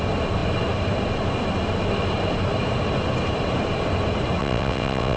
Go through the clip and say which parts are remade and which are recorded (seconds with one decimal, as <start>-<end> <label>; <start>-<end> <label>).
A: 0.0-4.4 recorded; 4.4-5.2 remade